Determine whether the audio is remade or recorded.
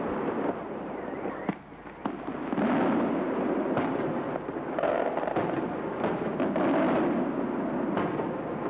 recorded